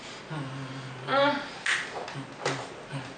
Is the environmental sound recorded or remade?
recorded